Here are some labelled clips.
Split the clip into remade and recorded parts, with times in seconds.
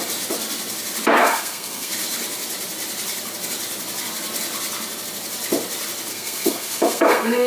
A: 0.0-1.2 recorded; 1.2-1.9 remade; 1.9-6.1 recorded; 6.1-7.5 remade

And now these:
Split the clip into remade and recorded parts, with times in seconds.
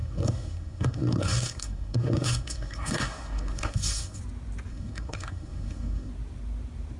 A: 0.0-4.2 remade; 4.2-4.7 recorded; 4.7-6.1 remade; 6.1-7.0 recorded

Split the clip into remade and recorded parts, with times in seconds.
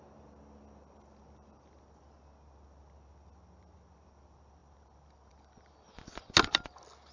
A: 0.0-7.1 recorded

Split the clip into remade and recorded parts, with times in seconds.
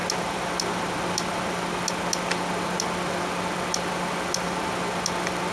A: 0.0-5.5 recorded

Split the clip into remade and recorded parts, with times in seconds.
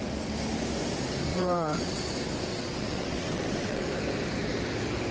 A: 0.0-1.3 recorded; 1.3-2.0 remade; 2.0-2.5 recorded; 2.5-3.8 remade; 3.8-5.1 recorded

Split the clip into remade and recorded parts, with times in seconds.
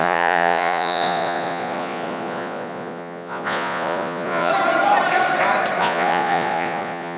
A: 0.0-4.5 remade; 4.5-5.8 recorded; 5.8-7.2 remade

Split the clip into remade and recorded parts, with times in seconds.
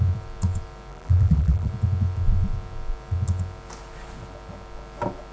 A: 0.0-0.9 recorded; 0.9-1.7 remade; 1.7-5.3 recorded